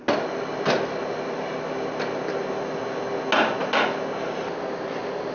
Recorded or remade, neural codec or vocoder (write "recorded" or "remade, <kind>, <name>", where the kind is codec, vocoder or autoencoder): recorded